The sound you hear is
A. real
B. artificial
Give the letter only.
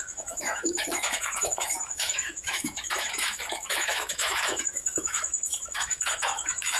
B